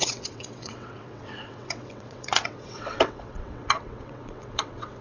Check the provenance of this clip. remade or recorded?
remade